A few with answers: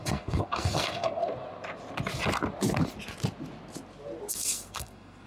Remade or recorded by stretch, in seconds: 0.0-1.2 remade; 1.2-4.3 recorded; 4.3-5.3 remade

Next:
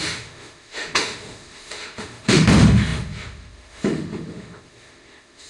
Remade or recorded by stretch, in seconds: 0.0-5.5 remade